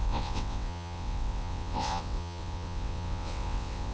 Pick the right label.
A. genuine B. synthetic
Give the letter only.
B